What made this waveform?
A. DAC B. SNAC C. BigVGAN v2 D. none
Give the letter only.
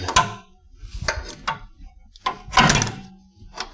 D